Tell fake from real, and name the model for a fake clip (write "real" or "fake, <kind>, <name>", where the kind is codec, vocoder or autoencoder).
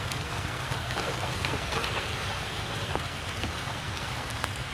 fake, codec, SNAC